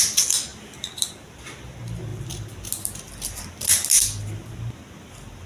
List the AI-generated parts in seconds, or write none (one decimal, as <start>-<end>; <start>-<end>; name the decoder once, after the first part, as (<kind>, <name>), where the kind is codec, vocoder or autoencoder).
0.5-1.5 (vocoder, BigVGAN v2); 2.1-4.0